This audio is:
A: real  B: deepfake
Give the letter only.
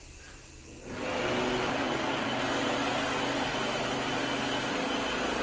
A